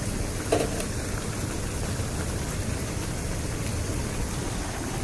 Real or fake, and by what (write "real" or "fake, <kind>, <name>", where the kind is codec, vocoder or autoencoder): fake, vocoder, BigVGAN v2